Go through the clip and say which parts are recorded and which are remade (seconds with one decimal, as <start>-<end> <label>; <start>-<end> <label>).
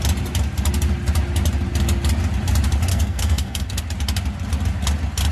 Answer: 0.0-2.9 recorded; 2.9-3.8 remade; 3.8-5.3 recorded